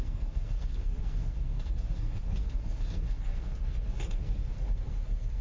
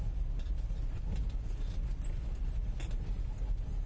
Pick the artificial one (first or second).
first